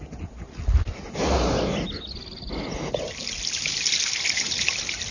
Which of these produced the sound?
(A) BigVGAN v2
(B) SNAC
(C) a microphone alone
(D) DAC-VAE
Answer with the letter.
C